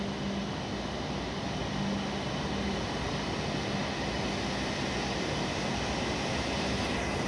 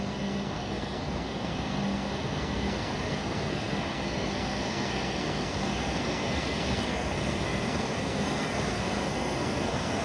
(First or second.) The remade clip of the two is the second